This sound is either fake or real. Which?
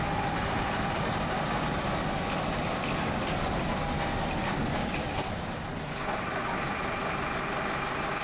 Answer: real